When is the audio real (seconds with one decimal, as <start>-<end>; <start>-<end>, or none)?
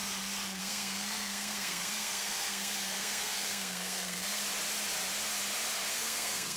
0.0-0.6; 4.4-5.9